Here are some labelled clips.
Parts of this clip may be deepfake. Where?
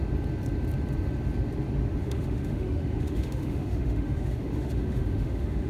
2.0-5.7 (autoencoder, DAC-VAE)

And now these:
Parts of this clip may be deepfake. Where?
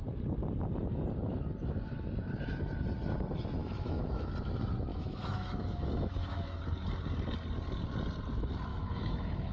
3.6-4.3 (autoencoder, DAC-VAE); 4.9-6.6; 8.7-9.5